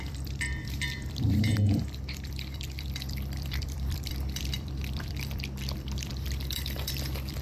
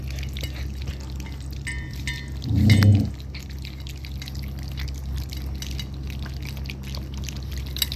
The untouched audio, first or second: second